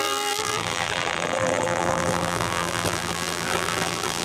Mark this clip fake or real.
fake